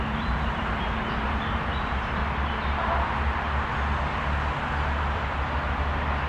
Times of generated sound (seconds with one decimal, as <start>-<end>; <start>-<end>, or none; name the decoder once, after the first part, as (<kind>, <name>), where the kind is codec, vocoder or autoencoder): 0.0-2.2 (vocoder, BigVGAN v2)